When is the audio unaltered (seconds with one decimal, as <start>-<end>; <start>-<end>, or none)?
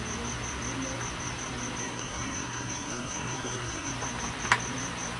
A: 0.0-1.8; 3.9-5.2